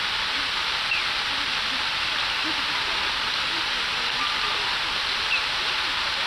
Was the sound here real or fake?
fake